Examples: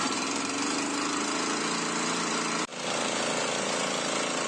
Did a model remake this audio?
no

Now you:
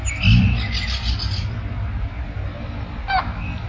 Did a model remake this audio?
no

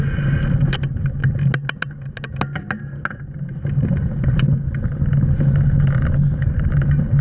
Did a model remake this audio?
no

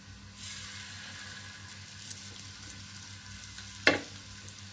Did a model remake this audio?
no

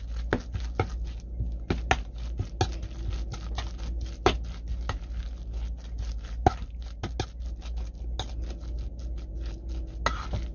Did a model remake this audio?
no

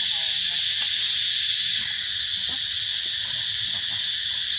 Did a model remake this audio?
no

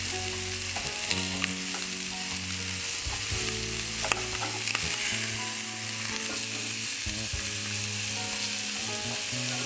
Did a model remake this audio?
no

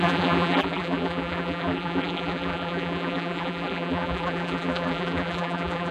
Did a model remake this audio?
yes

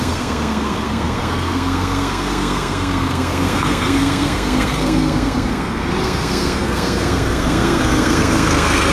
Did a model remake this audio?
yes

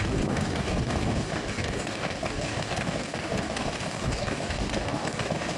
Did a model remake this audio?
yes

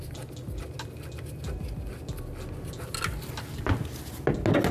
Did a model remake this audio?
no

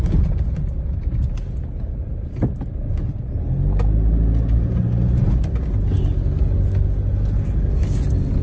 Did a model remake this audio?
no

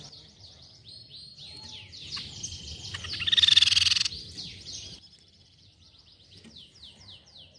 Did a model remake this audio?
no